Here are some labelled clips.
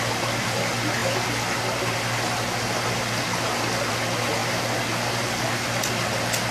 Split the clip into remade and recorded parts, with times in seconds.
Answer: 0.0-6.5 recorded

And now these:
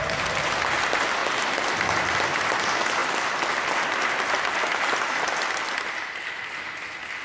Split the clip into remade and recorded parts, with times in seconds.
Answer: 0.0-7.2 recorded